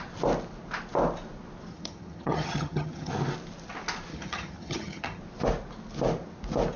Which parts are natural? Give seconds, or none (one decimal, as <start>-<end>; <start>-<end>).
0.0-1.7; 3.1-4.1; 5.2-6.8